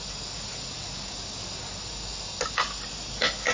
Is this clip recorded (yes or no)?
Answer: yes